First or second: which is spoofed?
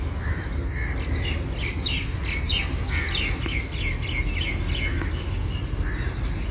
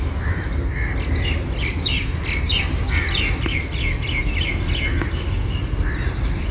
second